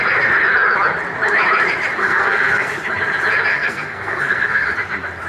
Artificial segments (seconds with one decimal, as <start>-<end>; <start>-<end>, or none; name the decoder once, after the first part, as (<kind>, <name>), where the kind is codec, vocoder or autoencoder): 2.0-2.7 (codec, SNAC); 3.5-4.7